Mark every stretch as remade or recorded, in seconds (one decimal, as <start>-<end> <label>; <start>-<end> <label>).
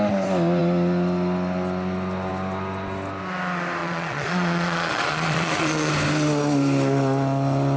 0.0-3.8 recorded; 3.8-5.9 remade; 5.9-7.8 recorded